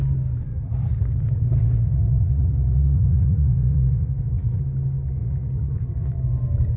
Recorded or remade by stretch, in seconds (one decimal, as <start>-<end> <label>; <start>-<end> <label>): 0.0-0.5 recorded; 0.5-4.6 remade; 4.6-5.2 recorded; 5.2-6.2 remade; 6.2-6.8 recorded

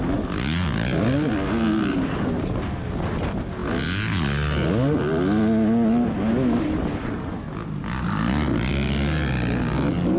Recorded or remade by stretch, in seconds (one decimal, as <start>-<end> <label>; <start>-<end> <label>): 0.0-10.2 recorded

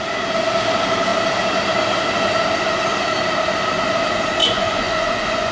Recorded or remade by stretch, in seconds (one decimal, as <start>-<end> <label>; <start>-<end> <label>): 0.0-4.4 recorded; 4.4-5.5 remade

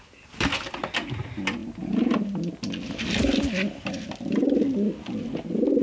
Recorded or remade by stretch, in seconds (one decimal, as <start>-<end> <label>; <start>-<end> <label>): 0.0-5.8 recorded

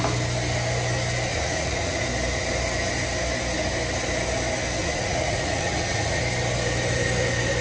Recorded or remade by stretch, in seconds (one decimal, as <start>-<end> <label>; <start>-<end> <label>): 0.0-1.3 recorded; 1.3-2.0 remade; 2.0-4.8 recorded; 4.8-6.2 remade; 6.2-7.6 recorded

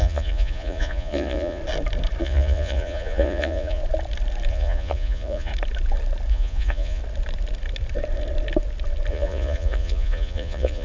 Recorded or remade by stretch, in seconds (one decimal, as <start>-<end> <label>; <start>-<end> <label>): 0.0-1.6 remade; 1.6-2.2 recorded; 2.2-3.8 remade; 3.8-4.5 recorded; 4.5-5.5 remade; 5.5-6.3 recorded; 6.3-7.0 remade; 7.0-9.1 recorded; 9.1-10.8 remade